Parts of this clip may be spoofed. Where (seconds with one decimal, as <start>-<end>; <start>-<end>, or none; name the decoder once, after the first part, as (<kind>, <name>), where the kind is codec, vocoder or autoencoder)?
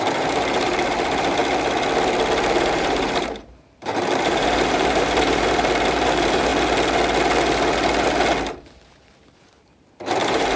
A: 0.0-1.4 (vocoder, BigVGAN v2); 2.6-6.5; 8.5-10.6